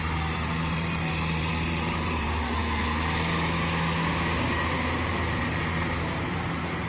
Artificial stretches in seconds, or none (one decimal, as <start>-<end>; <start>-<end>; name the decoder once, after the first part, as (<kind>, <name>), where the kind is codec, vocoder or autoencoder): 0.0-2.6 (vocoder, BigVGAN v2); 5.4-6.9